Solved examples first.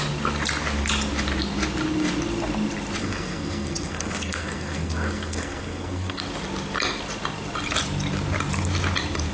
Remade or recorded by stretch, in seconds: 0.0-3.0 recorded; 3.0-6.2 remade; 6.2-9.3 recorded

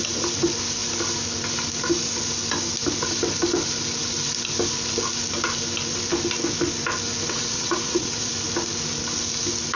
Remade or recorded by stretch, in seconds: 0.0-7.3 recorded; 7.3-8.3 remade; 8.3-9.8 recorded